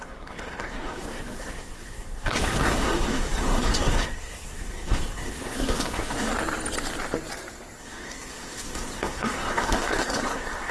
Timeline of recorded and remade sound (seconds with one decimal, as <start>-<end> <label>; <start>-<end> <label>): 0.0-6.3 remade; 6.3-7.8 recorded; 7.8-10.7 remade